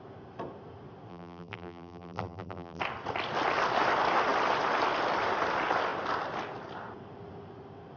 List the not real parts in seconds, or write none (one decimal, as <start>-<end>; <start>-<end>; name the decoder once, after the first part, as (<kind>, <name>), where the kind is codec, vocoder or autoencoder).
1.1-2.8 (vocoder, BigVGAN v2)